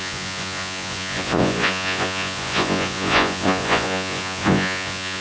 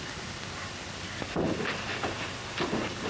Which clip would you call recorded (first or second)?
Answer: second